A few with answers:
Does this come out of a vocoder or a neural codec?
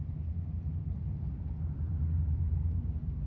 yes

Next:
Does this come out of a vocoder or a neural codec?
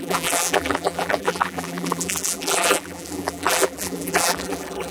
yes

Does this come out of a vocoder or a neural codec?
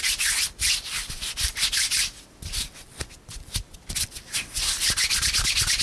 no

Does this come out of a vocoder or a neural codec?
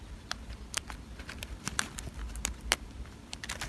yes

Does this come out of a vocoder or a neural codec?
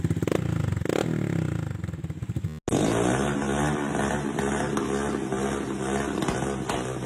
no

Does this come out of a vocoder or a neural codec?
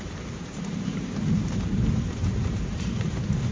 yes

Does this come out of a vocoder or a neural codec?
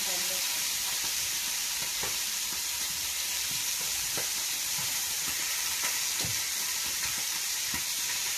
yes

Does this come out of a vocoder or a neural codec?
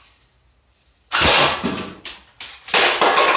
no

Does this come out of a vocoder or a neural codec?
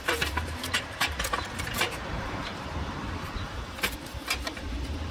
yes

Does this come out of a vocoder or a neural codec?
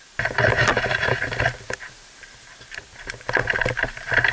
no